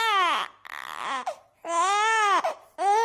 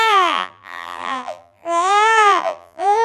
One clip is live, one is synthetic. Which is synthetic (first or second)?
second